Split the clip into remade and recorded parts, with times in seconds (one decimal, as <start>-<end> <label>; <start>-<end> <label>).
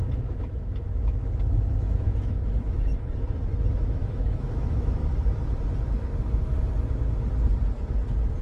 0.0-2.9 remade; 2.9-3.8 recorded; 3.8-5.0 remade; 5.0-8.4 recorded